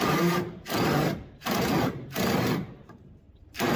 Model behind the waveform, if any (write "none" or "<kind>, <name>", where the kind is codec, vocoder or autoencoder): vocoder, BigVGAN v2